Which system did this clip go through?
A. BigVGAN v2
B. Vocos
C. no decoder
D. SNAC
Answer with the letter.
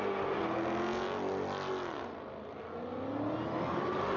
C